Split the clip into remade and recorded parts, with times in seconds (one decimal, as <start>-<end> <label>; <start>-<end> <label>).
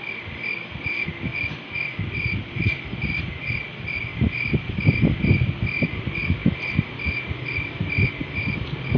0.0-1.3 recorded; 1.3-3.2 remade; 3.2-4.1 recorded; 4.1-5.2 remade; 5.2-6.4 recorded; 6.4-6.9 remade; 6.9-9.0 recorded